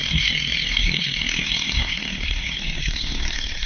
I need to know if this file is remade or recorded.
remade